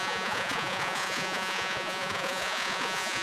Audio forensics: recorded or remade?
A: remade